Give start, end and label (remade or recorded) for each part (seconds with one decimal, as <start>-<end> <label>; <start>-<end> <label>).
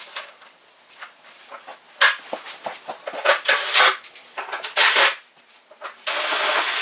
0.0-6.8 recorded